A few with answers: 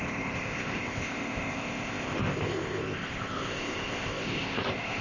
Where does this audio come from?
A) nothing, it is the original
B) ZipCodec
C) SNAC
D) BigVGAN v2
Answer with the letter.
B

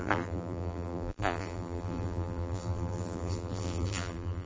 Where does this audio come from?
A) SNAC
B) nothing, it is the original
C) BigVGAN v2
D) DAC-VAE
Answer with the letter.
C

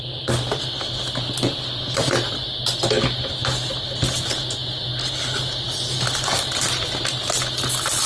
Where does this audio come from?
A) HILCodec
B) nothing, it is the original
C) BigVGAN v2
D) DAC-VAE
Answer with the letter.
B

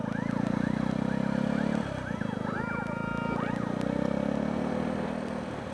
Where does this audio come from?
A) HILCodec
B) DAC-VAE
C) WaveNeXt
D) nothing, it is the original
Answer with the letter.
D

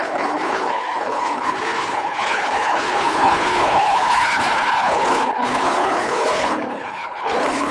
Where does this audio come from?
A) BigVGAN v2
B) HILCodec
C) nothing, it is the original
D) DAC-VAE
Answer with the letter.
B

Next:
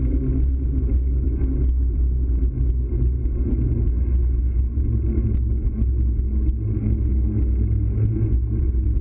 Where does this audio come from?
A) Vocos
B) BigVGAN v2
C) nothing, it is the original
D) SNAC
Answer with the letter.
C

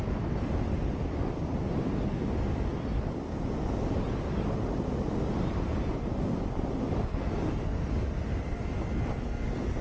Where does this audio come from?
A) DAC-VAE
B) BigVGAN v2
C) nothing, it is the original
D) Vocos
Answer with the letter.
C